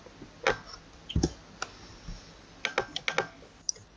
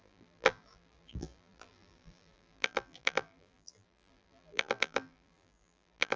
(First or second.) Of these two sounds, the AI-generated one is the second